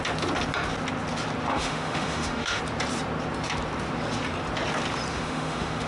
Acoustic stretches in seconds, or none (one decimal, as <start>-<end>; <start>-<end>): 0.0-1.5; 2.6-5.1